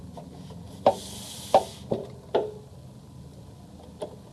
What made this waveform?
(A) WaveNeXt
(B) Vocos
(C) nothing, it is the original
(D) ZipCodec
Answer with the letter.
C